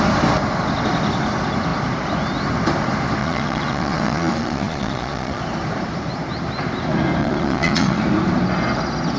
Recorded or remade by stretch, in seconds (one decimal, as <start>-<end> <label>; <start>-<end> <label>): 0.0-3.2 recorded; 3.2-5.4 remade; 5.4-7.2 recorded; 7.2-8.0 remade; 8.0-9.2 recorded